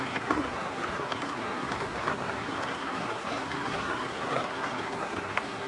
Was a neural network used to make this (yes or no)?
yes